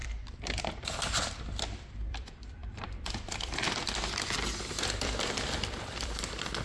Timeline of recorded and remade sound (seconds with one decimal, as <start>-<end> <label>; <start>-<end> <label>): 0.0-6.6 remade